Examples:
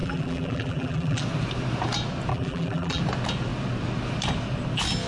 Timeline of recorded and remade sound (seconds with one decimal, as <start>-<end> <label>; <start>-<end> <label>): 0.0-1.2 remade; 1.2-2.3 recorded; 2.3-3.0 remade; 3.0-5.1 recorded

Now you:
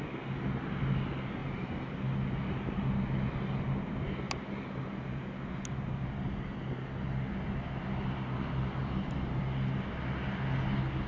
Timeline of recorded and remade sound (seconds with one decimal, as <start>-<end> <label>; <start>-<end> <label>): 0.0-1.4 recorded; 1.4-1.9 remade; 1.9-8.8 recorded; 8.8-9.4 remade; 9.4-11.1 recorded

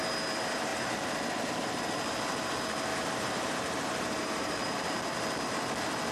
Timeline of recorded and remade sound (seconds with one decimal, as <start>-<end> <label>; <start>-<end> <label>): 0.0-2.9 recorded; 2.9-4.8 remade; 4.8-6.1 recorded

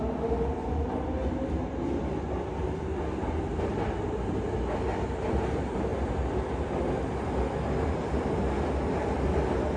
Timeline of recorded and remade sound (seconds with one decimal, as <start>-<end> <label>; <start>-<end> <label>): 0.0-9.8 recorded

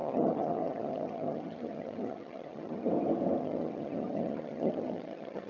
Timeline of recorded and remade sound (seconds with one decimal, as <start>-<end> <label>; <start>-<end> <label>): 0.0-2.9 remade; 2.9-3.4 recorded; 3.4-5.5 remade

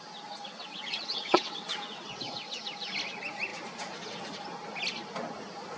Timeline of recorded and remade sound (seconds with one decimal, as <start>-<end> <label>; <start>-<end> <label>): 0.0-0.4 recorded; 0.4-2.6 remade; 2.6-5.8 recorded

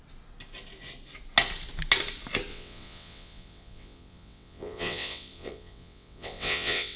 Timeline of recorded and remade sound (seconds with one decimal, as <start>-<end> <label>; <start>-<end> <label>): 0.0-2.5 recorded; 2.5-7.0 remade

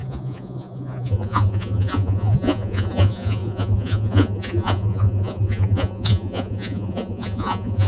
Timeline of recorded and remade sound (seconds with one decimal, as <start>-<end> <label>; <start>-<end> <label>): 0.0-7.9 remade